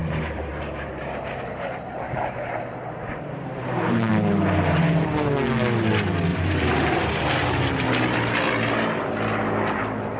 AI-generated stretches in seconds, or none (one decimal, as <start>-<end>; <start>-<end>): 0.0-4.1; 6.3-7.0